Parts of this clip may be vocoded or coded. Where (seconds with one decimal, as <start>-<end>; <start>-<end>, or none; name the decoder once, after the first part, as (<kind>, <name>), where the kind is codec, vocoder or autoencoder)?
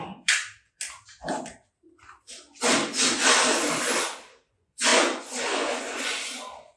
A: 0.0-0.4 (vocoder, Vocos); 4.5-6.8